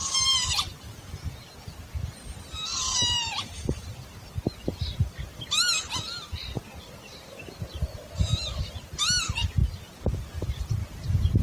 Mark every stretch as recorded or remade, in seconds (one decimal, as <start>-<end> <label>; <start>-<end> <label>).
0.0-11.4 recorded